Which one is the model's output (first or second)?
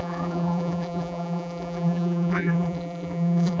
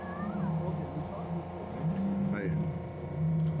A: first